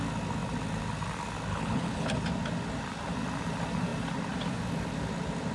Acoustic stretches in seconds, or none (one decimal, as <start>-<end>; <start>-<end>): 0.0-1.5; 2.1-5.5

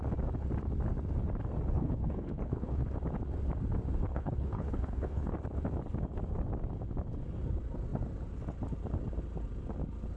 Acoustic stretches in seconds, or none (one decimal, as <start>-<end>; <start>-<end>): 0.0-1.8; 2.9-4.1; 5.3-10.2

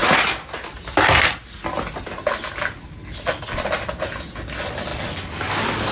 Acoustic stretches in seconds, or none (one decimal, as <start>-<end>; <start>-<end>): 0.0-5.9

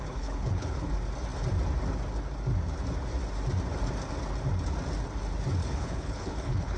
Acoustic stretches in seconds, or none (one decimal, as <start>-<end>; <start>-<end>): 0.9-5.6

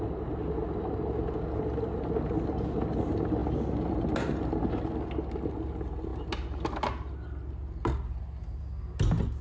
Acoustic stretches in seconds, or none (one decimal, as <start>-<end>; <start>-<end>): 0.0-9.4